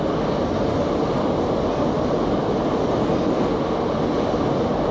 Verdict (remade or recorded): recorded